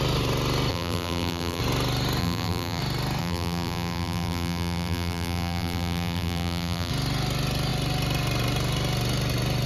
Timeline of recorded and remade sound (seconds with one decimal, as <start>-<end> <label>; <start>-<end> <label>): 0.0-0.7 recorded; 0.7-1.6 remade; 1.6-2.2 recorded; 2.2-2.8 remade; 2.8-3.2 recorded; 3.2-6.9 remade; 6.9-9.7 recorded